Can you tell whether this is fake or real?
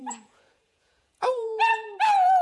fake